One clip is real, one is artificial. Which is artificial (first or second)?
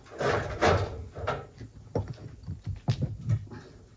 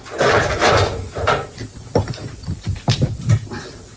second